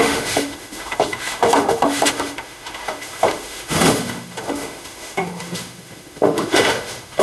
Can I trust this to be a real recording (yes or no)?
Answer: no